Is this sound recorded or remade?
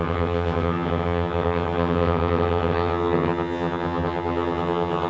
remade